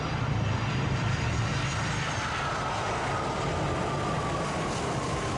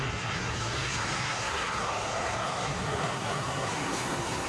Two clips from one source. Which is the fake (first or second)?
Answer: second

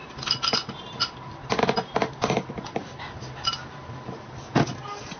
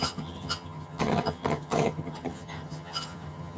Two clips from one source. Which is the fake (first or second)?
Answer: second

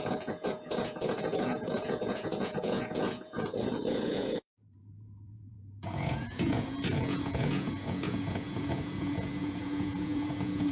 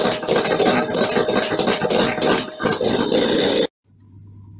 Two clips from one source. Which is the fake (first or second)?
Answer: first